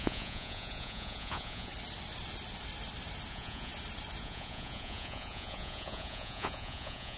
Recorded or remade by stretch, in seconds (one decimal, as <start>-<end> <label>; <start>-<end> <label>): 0.0-1.7 remade; 1.7-3.3 recorded; 3.3-3.7 remade; 3.7-4.2 recorded; 4.2-7.2 remade